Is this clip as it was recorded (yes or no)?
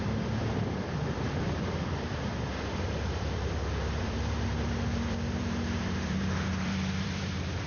no